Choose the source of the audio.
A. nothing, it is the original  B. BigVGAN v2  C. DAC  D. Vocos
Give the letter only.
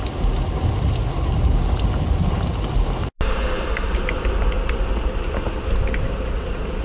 A